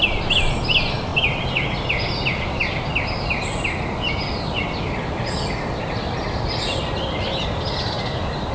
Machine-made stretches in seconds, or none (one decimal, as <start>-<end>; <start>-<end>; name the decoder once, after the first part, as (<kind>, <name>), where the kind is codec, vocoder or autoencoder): none